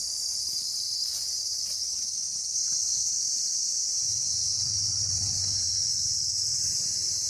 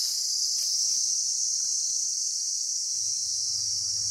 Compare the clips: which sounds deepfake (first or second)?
first